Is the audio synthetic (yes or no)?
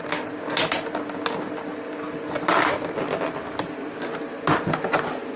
no